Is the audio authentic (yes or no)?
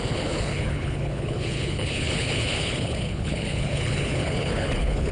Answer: no